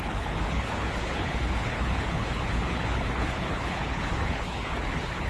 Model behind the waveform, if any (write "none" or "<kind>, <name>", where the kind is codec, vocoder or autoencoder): codec, HILCodec